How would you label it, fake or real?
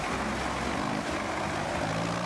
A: real